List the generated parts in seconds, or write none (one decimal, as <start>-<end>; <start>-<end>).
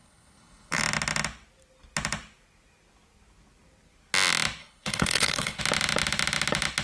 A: 0.0-0.8; 4.6-5.6